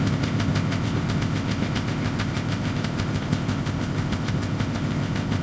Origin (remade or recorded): remade